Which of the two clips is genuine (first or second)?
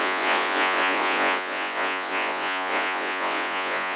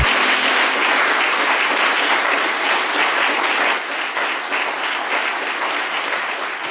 second